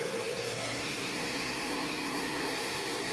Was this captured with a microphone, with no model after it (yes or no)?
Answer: no